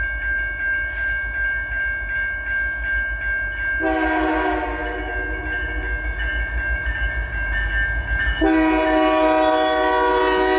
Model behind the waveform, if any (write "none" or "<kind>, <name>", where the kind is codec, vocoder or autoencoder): none